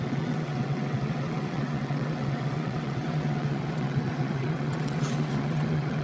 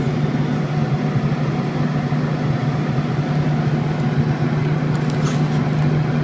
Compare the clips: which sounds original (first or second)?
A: second